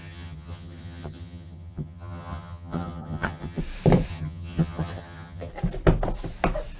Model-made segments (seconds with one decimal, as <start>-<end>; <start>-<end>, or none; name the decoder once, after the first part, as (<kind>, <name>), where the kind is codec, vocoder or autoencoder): 0.0-3.6 (vocoder, HiFi-GAN); 4.1-5.5